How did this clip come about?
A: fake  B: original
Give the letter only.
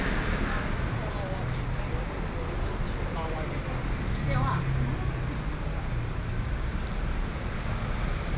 B